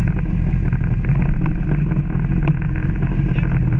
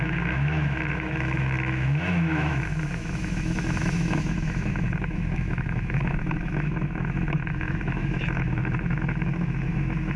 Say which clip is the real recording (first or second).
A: first